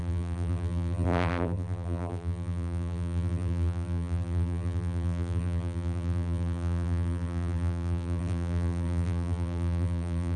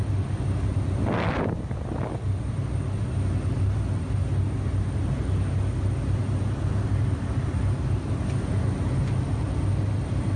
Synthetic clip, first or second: first